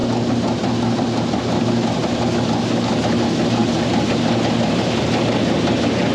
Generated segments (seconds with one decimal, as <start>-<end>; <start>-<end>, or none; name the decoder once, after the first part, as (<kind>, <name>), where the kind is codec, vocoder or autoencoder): none